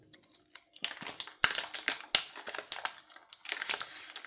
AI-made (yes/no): no